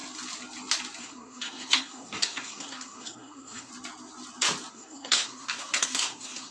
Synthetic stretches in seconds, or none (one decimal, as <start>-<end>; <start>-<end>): 1.0-3.7; 4.7-6.5